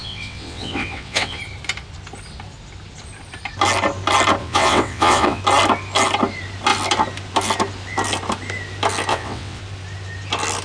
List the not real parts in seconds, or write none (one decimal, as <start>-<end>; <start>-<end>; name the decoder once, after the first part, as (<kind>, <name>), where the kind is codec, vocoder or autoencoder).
0.0-1.4 (vocoder, WaveNeXt); 4.4-5.4; 9.1-9.6